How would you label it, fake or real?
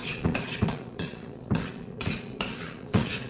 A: fake